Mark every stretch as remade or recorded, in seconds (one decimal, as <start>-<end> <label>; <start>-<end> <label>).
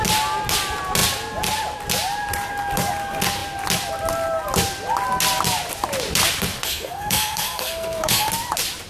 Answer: 0.0-6.6 recorded; 6.6-8.3 remade; 8.3-8.9 recorded